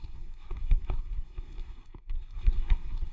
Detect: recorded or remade remade